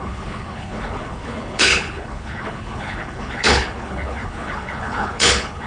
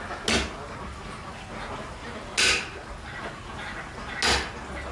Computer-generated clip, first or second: first